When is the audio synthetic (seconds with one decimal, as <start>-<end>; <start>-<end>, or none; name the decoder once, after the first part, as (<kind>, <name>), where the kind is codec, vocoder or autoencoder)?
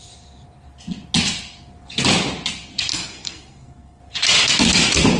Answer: 2.9-4.0 (codec, SNAC)